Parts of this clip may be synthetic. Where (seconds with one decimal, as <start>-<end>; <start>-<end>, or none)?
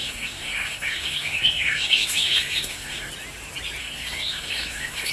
0.0-3.1; 3.8-5.1